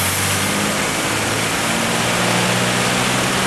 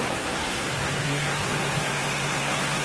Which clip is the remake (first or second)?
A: second